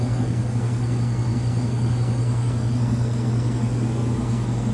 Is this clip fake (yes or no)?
yes